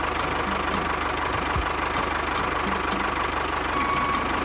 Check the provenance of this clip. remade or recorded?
recorded